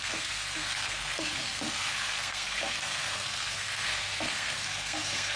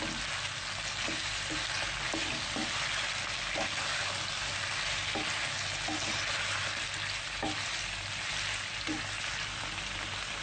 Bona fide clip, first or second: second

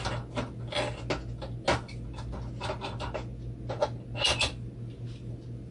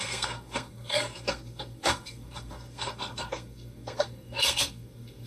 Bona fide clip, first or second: first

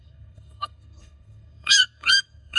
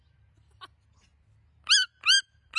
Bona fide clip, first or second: second